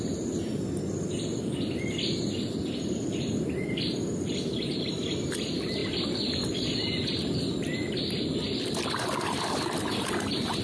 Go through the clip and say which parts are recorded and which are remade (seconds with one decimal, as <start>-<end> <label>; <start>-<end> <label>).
0.0-10.6 remade